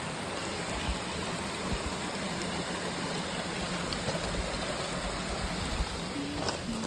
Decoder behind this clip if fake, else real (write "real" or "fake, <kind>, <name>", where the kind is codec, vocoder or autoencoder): real